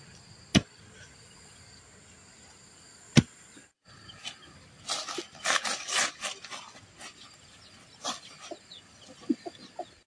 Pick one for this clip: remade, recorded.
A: recorded